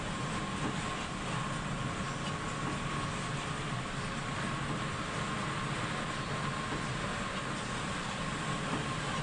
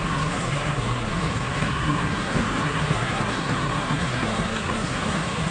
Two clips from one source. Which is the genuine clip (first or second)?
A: first